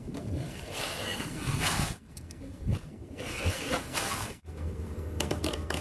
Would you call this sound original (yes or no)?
no